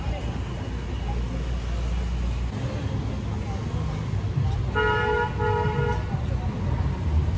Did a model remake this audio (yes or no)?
no